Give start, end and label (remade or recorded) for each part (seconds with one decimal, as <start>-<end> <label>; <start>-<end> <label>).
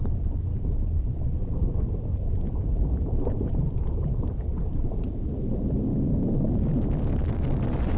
0.0-0.5 recorded; 0.5-4.0 remade; 4.0-4.8 recorded; 4.8-5.5 remade; 5.5-8.0 recorded